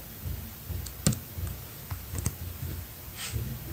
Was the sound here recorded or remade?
recorded